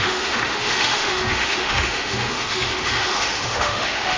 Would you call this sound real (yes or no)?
no